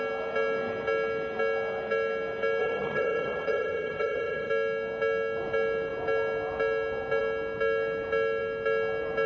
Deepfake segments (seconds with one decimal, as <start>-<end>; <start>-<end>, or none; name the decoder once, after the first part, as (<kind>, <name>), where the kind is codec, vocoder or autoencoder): 2.6-4.5 (vocoder, HiFi-GAN)